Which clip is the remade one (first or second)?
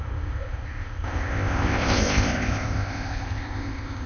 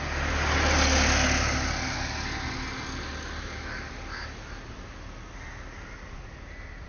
first